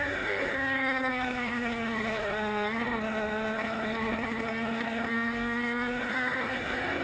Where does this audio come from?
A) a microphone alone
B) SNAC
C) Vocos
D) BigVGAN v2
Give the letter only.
B